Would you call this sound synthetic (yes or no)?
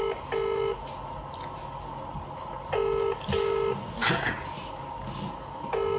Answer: no